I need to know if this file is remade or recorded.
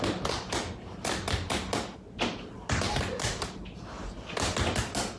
recorded